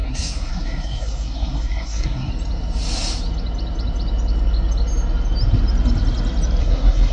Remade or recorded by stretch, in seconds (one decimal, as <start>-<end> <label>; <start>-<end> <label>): 0.0-2.3 remade; 2.3-6.6 recorded; 6.6-7.1 remade